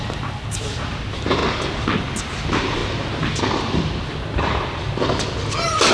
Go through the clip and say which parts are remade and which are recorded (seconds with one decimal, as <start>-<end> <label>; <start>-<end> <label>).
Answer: 0.0-1.4 remade; 1.4-2.2 recorded; 2.2-2.8 remade; 2.8-5.9 recorded

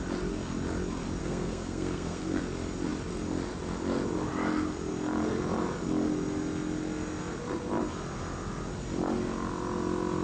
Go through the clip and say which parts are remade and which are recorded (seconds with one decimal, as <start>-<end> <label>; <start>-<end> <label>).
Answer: 0.0-1.2 recorded; 1.2-2.4 remade; 2.4-10.2 recorded

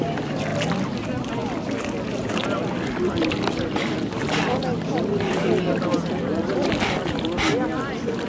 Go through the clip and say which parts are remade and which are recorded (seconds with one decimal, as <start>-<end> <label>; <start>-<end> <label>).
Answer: 0.0-8.3 recorded

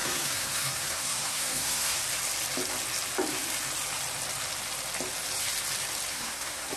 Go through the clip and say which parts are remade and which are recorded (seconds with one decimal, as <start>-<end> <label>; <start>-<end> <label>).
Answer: 0.0-2.0 remade; 2.0-6.1 recorded; 6.1-6.8 remade

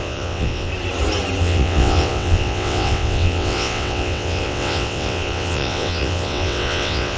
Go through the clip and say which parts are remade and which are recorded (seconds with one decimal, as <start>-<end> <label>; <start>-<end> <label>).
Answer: 0.0-0.7 remade; 0.7-1.4 recorded; 1.4-7.2 remade

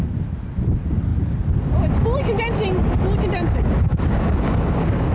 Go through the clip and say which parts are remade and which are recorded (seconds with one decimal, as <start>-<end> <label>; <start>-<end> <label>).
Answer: 0.0-3.9 recorded; 3.9-5.1 remade

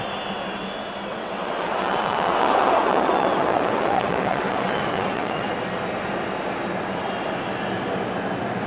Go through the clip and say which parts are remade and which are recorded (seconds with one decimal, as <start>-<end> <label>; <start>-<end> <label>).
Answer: 0.0-1.1 recorded; 1.1-5.5 remade; 5.5-8.7 recorded